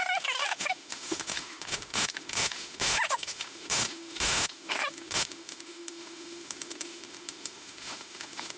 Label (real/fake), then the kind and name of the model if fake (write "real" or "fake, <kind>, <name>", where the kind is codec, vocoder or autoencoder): fake, autoencoder, DAC-VAE